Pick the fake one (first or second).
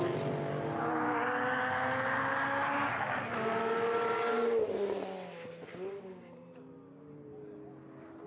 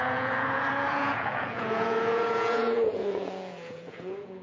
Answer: second